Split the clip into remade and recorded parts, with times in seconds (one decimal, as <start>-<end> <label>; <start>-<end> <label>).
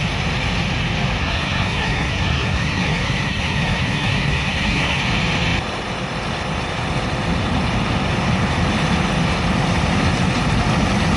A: 0.0-1.2 recorded; 1.2-5.0 remade; 5.0-11.2 recorded